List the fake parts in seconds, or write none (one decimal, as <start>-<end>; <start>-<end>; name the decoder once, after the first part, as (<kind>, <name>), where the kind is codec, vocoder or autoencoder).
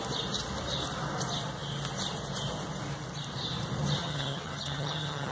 4.0-5.3 (vocoder, HiFi-GAN)